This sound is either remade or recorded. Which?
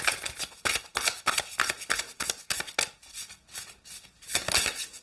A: recorded